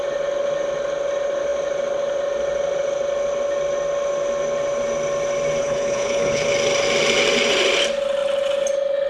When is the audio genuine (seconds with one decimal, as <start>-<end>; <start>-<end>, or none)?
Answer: 0.0-5.6; 6.5-9.1